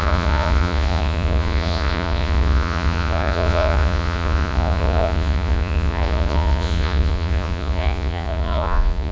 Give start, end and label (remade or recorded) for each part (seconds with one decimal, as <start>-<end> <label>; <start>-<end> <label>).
0.0-9.1 remade